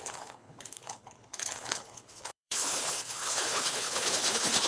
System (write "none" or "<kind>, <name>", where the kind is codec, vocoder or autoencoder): codec, HILCodec